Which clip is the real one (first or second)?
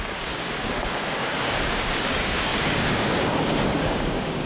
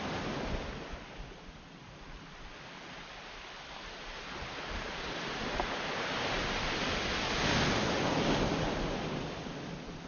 second